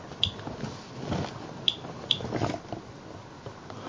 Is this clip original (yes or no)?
yes